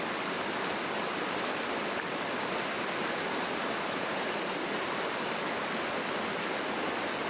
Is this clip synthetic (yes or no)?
no